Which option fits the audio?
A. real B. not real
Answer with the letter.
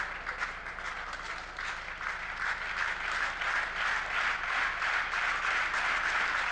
A